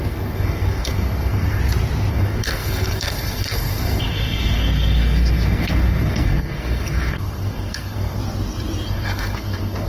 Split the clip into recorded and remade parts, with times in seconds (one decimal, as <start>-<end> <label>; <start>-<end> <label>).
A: 0.0-1.6 remade; 1.6-2.1 recorded; 2.1-8.2 remade; 8.2-8.9 recorded; 8.9-9.9 remade